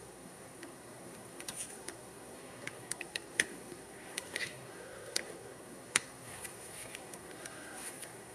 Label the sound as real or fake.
fake